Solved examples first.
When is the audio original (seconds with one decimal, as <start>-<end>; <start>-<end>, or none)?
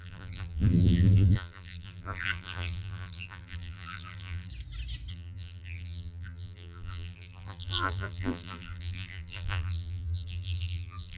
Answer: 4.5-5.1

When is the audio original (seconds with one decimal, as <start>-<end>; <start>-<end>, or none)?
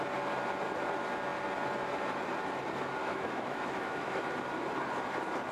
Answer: 0.0-3.0; 4.3-5.5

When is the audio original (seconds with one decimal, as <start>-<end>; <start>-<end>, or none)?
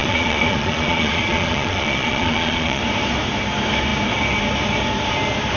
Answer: 2.8-5.6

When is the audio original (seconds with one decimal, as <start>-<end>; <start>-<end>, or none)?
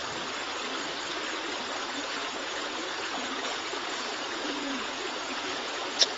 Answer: 0.0-1.8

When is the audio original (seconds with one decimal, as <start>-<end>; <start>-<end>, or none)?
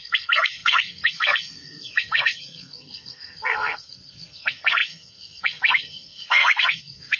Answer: none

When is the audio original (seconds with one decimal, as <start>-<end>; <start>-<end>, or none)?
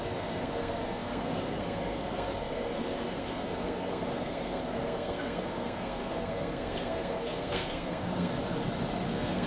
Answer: 8.3-9.1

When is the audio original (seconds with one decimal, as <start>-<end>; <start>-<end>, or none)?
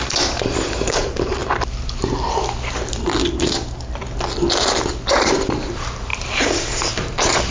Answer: 1.4-5.2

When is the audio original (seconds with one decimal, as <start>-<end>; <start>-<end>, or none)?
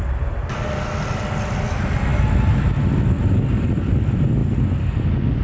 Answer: 0.0-5.4